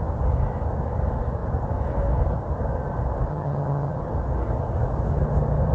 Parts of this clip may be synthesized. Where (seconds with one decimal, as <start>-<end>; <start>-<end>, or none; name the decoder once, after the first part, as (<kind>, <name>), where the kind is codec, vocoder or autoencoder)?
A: 3.3-4.0 (vocoder, HiFi-GAN)

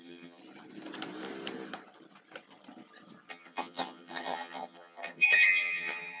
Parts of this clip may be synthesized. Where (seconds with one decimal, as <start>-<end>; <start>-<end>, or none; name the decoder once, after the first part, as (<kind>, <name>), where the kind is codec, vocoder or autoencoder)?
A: 0.0-0.4 (vocoder, HiFi-GAN); 3.3-6.2

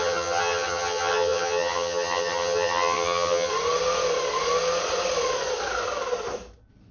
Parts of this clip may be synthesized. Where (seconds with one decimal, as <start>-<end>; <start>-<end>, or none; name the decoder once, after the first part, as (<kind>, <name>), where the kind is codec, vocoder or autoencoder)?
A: 0.0-3.5 (vocoder, HiFi-GAN)

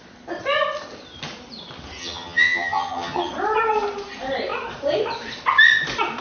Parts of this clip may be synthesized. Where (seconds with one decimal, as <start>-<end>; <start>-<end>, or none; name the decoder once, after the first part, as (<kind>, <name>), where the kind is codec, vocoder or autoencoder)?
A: 2.0-3.3 (vocoder, HiFi-GAN)

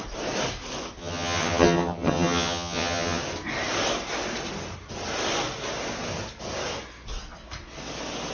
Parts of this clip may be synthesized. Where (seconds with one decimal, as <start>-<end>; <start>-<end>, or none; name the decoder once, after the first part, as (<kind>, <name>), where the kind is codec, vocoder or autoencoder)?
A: 1.0-3.2 (vocoder, HiFi-GAN)

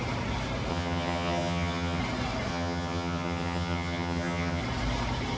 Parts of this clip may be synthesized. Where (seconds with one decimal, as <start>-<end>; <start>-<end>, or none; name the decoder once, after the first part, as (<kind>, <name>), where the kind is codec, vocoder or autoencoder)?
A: 0.7-2.0 (vocoder, HiFi-GAN); 2.5-4.6

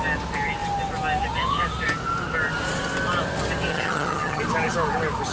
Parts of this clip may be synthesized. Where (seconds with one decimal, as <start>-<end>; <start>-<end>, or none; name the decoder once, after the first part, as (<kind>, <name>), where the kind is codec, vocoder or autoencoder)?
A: 3.7-4.4 (vocoder, HiFi-GAN)

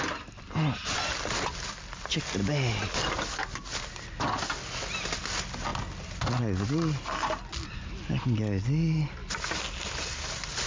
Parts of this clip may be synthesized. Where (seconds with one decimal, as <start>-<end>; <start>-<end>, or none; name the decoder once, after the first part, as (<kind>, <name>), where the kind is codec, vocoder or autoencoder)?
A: none